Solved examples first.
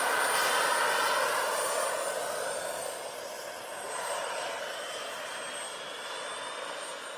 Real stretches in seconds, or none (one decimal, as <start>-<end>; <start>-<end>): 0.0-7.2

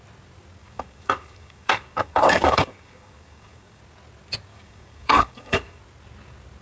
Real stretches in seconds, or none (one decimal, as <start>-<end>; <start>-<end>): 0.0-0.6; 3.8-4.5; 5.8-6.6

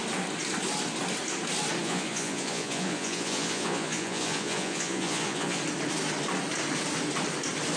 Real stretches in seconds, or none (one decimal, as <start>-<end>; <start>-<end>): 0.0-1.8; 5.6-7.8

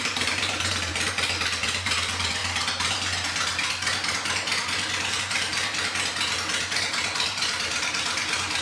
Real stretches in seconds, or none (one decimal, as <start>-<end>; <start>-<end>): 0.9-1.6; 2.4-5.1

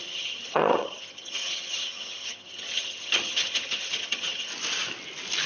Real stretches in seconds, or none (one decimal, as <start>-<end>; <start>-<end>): 4.5-5.5